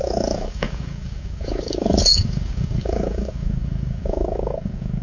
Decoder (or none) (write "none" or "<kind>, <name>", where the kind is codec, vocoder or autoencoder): codec, DAC